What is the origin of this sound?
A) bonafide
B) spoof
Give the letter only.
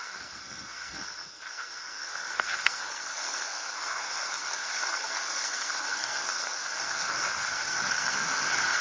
B